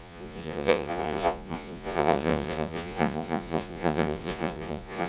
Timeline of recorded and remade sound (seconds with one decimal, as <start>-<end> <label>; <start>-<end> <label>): 0.0-5.1 remade